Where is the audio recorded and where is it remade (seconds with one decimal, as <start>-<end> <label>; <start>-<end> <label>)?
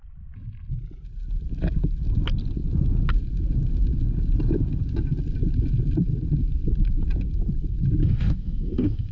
0.0-8.0 recorded; 8.0-9.1 remade